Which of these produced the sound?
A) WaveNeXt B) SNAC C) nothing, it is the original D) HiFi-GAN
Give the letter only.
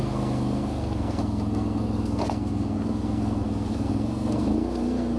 B